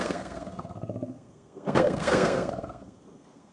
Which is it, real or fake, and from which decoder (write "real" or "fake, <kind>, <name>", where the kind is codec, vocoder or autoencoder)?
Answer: fake, codec, SNAC